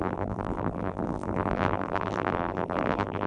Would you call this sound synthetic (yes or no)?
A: yes